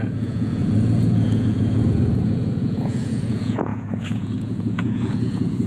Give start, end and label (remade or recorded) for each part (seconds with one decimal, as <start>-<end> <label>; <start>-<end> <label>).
0.0-5.7 remade